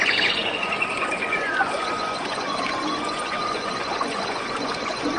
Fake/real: fake